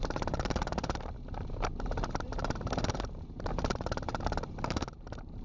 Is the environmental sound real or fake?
fake